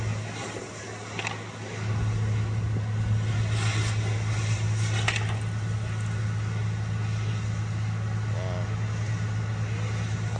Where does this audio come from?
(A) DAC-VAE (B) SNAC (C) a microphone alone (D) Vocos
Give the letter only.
C